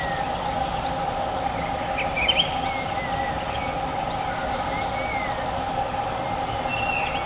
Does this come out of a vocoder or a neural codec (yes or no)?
no